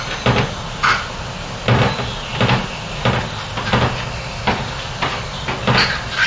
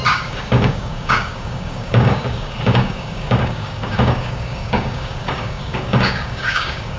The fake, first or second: second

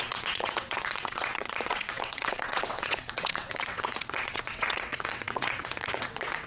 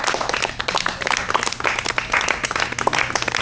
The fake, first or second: first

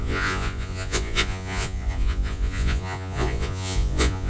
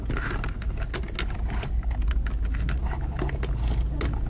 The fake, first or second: first